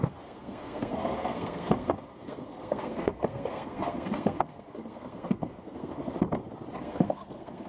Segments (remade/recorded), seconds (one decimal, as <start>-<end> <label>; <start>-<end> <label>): 0.0-6.0 remade; 6.0-6.8 recorded; 6.8-7.7 remade